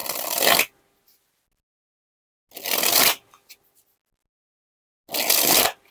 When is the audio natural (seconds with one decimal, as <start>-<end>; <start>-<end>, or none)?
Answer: 0.0-5.9